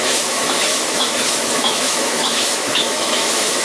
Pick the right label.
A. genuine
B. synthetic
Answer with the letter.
B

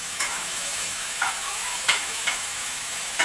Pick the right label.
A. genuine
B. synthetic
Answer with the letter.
B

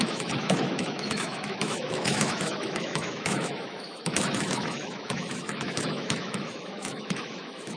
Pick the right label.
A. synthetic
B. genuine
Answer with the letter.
A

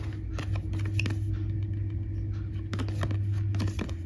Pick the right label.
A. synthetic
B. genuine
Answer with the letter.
B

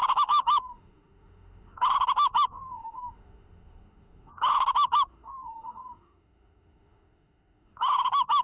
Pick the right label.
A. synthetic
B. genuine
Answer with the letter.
A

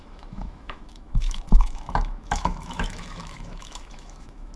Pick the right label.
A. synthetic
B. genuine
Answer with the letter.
A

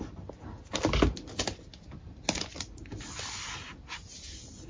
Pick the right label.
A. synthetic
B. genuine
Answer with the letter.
B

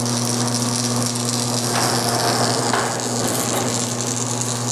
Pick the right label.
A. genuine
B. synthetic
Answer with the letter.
A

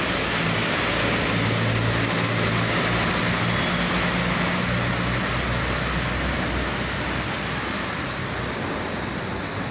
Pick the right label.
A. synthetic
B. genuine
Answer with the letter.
B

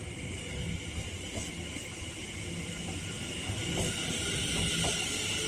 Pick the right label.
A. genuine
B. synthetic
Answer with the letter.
A